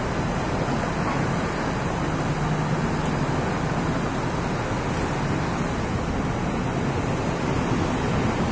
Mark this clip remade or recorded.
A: recorded